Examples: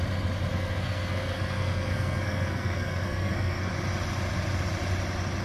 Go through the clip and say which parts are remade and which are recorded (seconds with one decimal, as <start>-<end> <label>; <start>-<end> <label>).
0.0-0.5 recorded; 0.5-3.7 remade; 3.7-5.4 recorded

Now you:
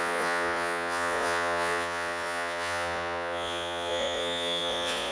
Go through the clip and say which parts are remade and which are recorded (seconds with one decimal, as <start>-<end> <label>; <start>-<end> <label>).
0.0-5.1 remade

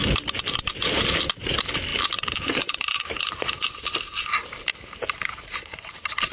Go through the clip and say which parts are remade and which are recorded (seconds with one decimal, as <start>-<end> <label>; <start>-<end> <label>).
0.0-6.3 remade